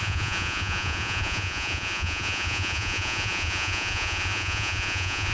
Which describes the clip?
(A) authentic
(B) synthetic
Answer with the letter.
B